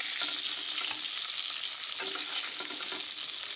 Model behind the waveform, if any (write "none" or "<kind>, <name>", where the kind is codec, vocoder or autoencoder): none